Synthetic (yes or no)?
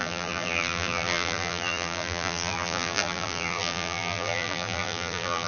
yes